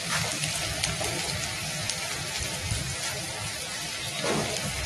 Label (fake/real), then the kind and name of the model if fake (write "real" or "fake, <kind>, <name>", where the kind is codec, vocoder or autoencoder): real